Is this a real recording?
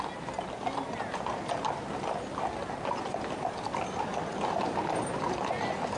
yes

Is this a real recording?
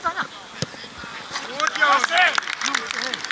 yes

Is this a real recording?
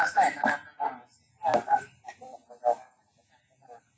yes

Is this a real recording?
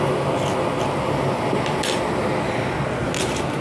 yes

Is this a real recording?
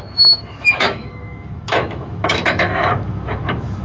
no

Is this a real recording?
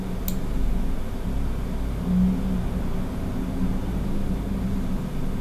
yes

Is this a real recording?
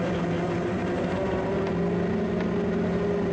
yes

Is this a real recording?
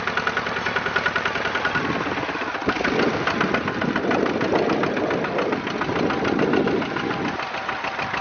yes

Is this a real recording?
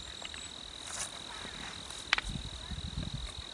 yes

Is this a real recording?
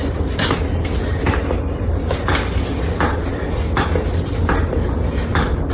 yes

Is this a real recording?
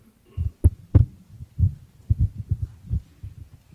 yes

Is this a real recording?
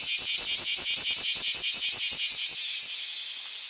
yes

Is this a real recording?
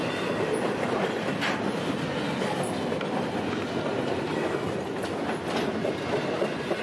yes